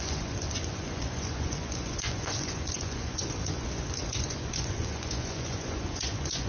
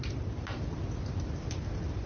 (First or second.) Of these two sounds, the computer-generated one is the first